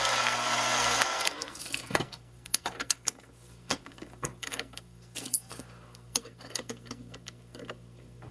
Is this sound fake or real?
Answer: fake